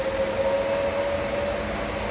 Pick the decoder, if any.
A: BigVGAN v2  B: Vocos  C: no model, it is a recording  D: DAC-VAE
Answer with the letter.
C